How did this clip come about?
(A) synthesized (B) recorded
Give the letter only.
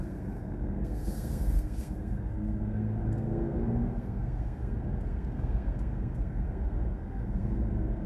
A